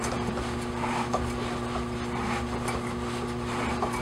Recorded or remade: remade